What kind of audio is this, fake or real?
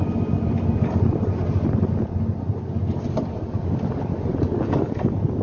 real